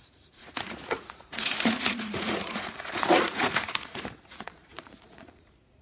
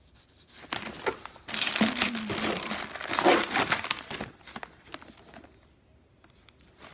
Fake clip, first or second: first